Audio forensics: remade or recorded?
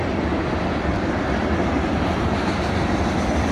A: recorded